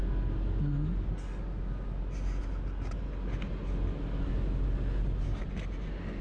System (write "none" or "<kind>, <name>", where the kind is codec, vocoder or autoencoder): none